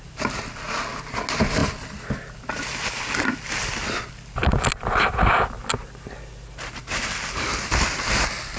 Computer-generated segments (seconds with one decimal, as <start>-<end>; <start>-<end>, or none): 1.6-4.0; 6.8-7.7